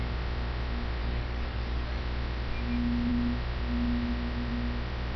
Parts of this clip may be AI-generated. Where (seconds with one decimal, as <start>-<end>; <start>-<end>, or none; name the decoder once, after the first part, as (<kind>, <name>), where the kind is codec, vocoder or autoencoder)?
1.0-2.0 (codec, DAC)